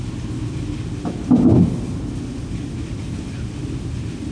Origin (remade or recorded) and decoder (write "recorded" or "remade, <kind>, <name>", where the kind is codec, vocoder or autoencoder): recorded